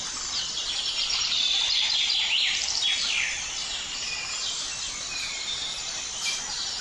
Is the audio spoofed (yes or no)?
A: no